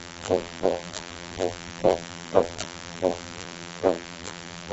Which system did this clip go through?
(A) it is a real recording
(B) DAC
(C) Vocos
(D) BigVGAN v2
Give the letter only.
D